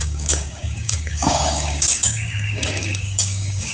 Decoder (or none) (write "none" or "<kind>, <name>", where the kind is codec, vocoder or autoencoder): codec, DAC